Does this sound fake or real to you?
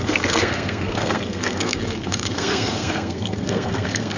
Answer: fake